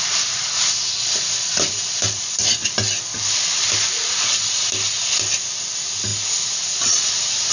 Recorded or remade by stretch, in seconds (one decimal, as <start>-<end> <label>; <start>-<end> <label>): 0.0-7.5 recorded